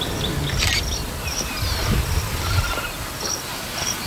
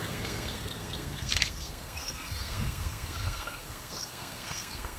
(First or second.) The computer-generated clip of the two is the second